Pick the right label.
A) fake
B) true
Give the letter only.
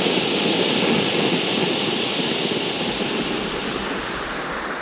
B